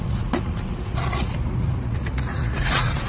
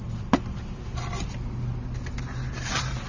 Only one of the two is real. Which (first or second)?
second